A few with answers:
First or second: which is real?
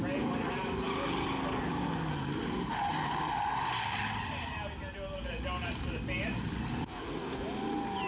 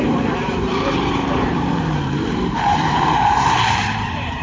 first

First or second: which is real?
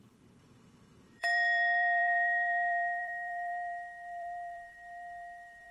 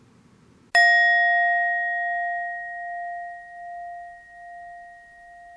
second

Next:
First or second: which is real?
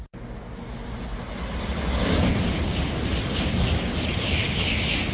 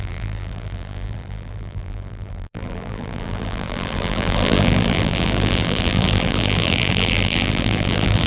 first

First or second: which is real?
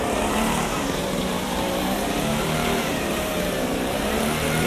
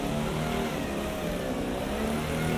second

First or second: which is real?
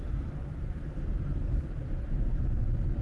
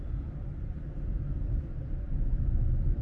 second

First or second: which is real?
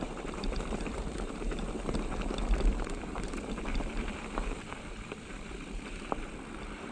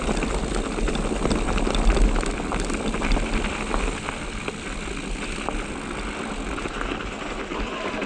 second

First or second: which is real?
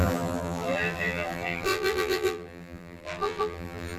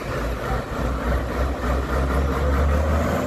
second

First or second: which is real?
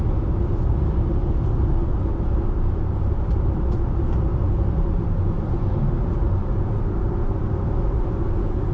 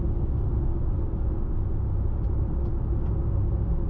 second